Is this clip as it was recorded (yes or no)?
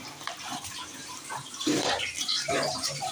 no